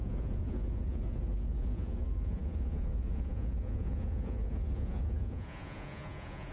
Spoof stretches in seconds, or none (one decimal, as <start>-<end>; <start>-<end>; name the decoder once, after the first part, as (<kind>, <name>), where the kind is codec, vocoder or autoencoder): 0.0-6.5 (vocoder, Vocos)